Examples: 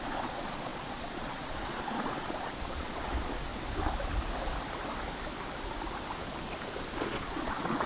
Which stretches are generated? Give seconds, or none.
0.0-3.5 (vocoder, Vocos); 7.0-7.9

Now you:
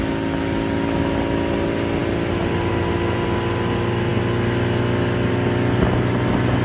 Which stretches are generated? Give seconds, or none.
none

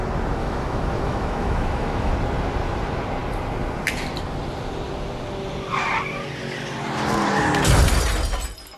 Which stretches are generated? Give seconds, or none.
0.4-2.1 (autoencoder, DAC-VAE)